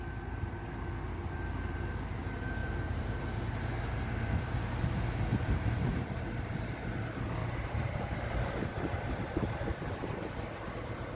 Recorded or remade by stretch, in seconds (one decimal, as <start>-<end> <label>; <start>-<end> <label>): 0.0-2.6 recorded; 2.6-3.2 remade; 3.2-5.3 recorded; 5.3-6.2 remade; 6.2-7.4 recorded; 7.4-9.2 remade; 9.2-11.2 recorded